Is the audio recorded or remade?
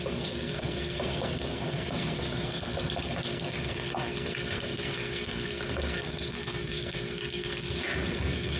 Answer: remade